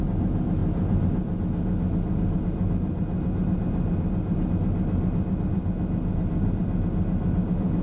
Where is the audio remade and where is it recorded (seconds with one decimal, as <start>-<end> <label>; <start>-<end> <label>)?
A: 0.0-7.8 recorded